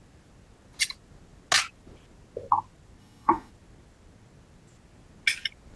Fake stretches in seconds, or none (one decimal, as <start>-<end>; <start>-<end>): 3.0-3.5